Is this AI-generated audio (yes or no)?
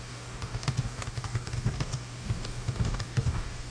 yes